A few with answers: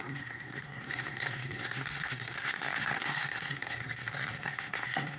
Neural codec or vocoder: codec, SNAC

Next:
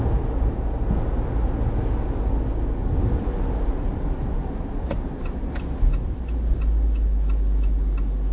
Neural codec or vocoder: none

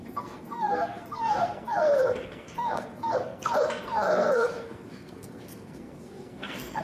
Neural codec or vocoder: codec, SNAC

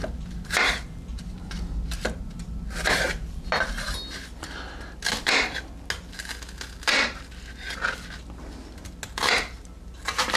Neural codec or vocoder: none